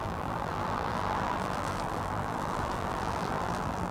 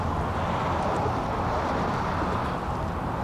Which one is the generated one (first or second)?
first